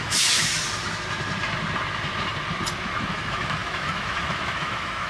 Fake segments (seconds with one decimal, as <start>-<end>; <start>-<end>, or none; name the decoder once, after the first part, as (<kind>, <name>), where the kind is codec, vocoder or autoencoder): 0.0-0.5 (autoencoder, DAC-VAE); 3.1-5.1